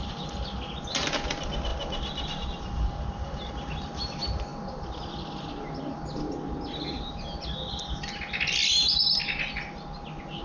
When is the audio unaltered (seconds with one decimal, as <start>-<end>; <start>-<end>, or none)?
0.0-10.4